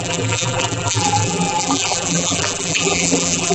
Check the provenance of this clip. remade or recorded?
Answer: remade